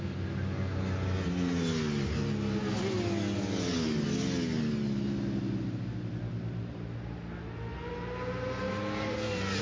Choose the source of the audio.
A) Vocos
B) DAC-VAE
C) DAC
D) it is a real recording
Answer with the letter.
D